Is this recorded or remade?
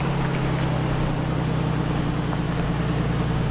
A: recorded